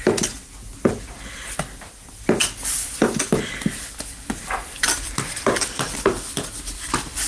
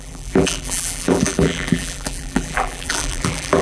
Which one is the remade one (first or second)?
second